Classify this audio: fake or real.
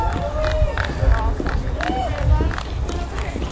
real